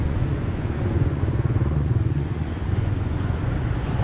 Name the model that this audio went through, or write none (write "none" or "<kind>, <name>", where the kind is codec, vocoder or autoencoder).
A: vocoder, Vocos